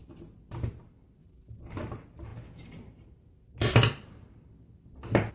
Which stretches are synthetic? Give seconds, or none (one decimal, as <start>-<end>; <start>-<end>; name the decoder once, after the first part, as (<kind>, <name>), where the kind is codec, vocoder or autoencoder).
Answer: none